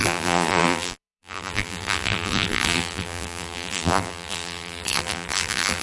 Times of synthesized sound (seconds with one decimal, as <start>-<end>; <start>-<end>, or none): 0.0-5.8